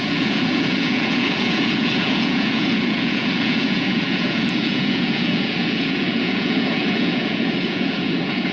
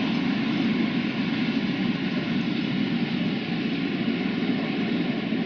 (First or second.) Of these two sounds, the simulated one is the first